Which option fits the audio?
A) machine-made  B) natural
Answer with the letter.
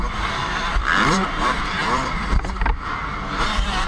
A